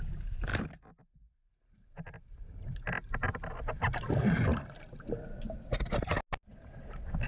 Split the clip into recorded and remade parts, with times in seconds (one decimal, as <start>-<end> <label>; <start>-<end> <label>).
0.0-7.3 recorded